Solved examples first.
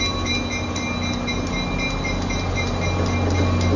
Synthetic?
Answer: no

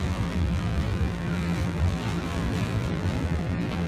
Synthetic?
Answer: yes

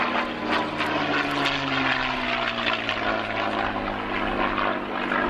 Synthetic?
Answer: no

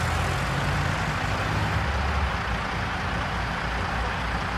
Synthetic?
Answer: no